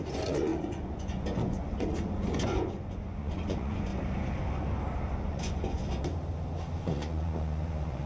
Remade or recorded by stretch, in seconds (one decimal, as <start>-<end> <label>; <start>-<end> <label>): 0.0-3.9 remade; 3.9-5.2 recorded; 5.2-5.8 remade; 5.8-6.8 recorded; 6.8-8.1 remade